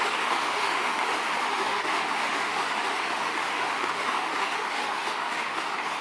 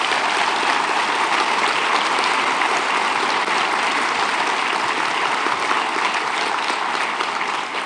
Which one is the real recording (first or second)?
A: second